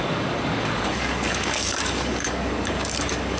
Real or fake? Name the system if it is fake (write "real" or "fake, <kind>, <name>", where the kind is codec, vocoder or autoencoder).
fake, codec, DAC